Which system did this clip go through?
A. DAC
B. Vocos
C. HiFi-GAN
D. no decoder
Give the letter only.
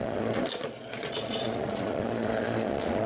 B